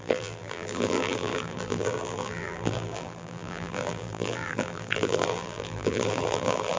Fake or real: fake